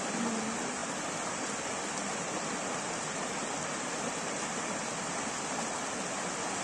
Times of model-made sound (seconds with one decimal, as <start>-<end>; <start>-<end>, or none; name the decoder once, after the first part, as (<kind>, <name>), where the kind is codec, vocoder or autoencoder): 0.8-3.9 (vocoder, BigVGAN v2)